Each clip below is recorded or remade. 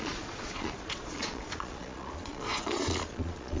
remade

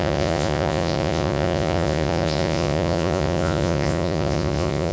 remade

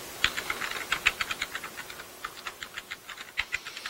recorded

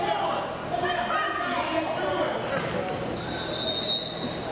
recorded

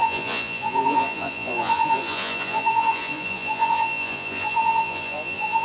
remade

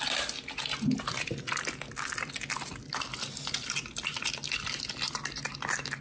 recorded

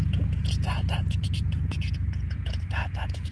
remade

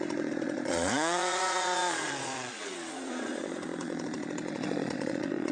remade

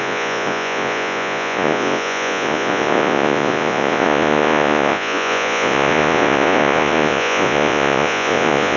remade